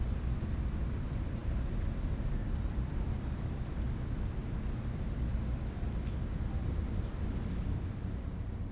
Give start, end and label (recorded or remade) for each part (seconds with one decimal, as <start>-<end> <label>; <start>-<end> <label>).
0.0-4.4 remade; 4.4-6.5 recorded; 6.5-8.7 remade